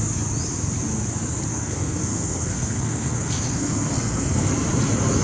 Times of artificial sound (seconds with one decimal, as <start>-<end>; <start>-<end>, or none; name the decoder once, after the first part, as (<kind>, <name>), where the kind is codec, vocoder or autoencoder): 1.5-4.5 (codec, SNAC)